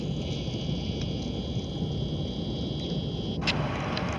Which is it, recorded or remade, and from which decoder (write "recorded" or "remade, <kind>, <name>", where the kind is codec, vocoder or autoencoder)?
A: recorded